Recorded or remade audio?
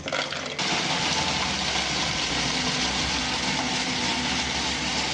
recorded